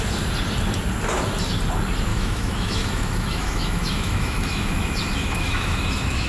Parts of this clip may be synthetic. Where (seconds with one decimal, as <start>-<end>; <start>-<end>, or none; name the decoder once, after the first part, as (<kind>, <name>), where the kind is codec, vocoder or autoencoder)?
2.1-6.3 (autoencoder, DAC-VAE)